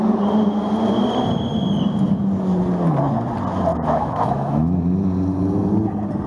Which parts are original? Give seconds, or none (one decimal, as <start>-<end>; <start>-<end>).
0.0-3.7; 4.8-6.3